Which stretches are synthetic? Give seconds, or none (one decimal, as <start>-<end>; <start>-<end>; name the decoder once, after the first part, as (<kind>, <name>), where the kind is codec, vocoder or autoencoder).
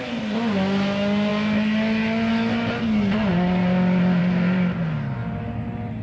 none